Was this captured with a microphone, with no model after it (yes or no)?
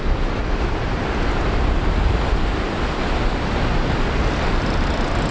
yes